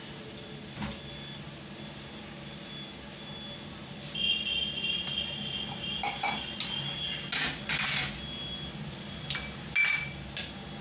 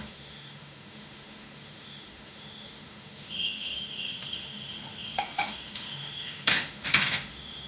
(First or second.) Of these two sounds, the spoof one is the second